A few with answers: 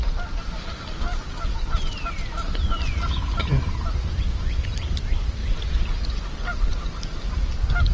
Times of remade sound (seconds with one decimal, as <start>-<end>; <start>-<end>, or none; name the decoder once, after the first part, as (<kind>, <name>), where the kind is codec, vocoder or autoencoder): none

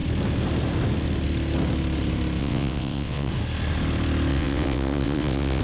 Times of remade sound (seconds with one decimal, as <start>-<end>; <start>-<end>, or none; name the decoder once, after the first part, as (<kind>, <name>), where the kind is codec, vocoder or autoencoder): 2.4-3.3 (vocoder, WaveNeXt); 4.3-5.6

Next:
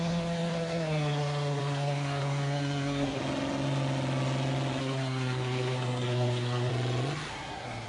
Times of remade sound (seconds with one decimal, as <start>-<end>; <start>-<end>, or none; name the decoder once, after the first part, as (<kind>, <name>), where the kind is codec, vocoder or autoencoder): 0.0-3.2 (codec, SNAC); 4.8-6.7; 7.3-7.9

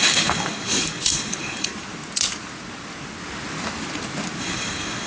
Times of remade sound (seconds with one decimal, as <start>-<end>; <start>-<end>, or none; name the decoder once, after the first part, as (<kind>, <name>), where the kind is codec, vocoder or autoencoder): 0.0-1.7 (codec, DAC); 4.4-5.1

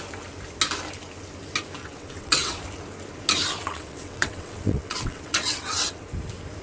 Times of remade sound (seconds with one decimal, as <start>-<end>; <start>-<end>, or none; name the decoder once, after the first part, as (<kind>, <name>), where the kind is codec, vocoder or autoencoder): 1.8-2.6 (vocoder, WaveNeXt); 3.6-6.0

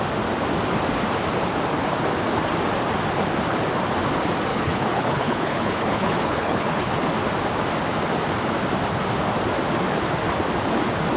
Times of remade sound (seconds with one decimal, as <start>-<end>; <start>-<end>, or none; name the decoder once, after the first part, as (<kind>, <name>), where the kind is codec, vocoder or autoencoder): 4.5-7.0 (codec, HILCodec)

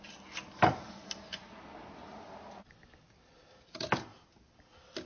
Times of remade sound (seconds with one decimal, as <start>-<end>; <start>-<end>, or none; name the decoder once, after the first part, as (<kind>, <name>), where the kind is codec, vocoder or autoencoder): none

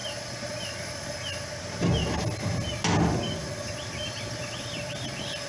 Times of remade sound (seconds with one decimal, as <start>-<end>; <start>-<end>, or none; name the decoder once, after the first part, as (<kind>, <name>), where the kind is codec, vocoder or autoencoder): none